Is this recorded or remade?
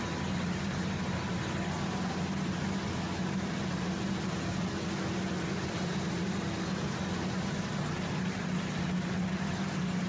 recorded